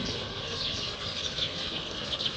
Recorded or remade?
remade